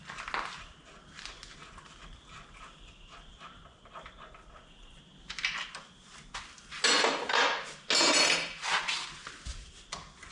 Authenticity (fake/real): real